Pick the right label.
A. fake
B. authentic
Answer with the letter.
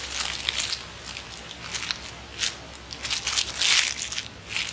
B